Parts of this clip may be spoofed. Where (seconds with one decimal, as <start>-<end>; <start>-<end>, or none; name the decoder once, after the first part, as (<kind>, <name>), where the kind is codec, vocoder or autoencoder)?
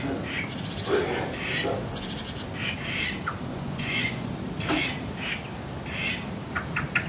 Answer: 3.5-4.3 (vocoder, Vocos)